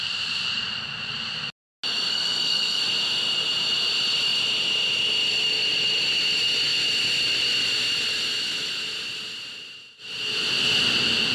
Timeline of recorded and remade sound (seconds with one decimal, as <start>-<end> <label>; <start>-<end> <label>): 0.0-2.1 recorded; 2.1-2.8 remade; 2.8-11.3 recorded